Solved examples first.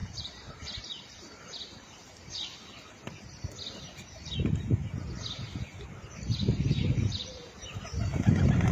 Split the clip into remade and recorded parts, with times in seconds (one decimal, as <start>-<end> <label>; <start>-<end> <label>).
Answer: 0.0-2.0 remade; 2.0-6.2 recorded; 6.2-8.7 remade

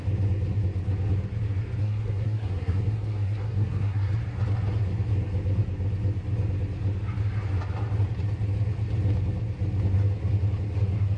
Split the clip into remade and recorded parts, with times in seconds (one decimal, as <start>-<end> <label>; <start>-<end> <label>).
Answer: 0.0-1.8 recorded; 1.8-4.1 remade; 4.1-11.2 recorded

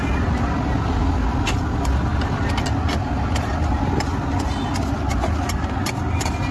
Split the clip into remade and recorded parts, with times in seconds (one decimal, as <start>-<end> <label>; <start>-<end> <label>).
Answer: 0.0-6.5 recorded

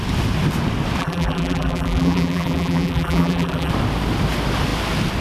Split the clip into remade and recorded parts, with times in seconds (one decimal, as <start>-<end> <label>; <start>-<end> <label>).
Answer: 0.0-1.0 recorded; 1.0-3.7 remade; 3.7-5.2 recorded